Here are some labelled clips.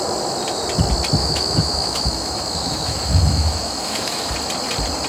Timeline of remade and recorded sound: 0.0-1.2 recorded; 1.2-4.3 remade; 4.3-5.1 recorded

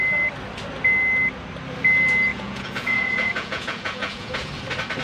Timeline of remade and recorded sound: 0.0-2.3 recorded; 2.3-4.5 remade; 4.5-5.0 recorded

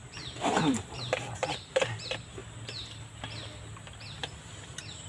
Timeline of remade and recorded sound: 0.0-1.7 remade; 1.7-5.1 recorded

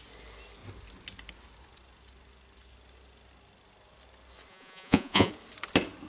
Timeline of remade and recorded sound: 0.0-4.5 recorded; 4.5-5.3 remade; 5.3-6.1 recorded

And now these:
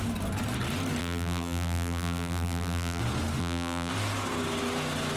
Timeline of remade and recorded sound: 0.0-1.0 recorded; 1.0-3.0 remade; 3.0-3.4 recorded; 3.4-3.9 remade; 3.9-5.2 recorded

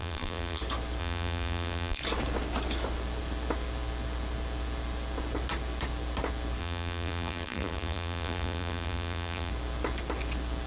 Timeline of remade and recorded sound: 0.0-0.6 remade; 0.6-1.0 recorded; 1.0-2.0 remade; 2.0-6.6 recorded; 6.6-9.5 remade; 9.5-10.7 recorded